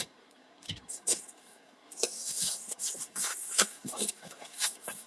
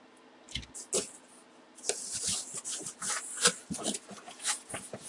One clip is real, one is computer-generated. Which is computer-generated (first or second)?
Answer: first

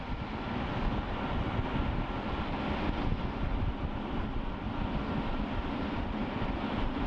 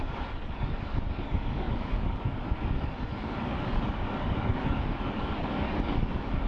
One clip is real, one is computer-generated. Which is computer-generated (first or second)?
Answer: second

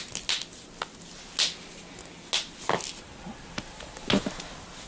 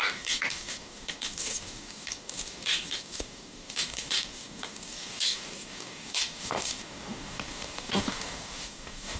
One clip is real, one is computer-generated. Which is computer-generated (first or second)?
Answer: second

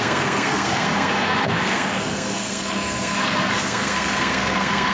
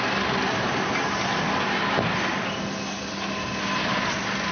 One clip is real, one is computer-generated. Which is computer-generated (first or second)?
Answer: first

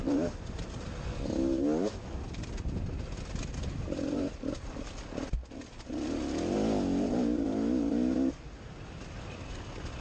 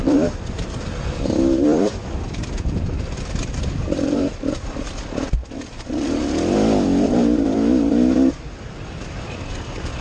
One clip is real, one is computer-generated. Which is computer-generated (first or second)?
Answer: second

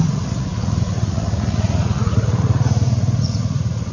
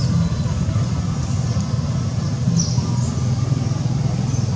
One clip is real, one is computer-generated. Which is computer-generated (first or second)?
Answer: first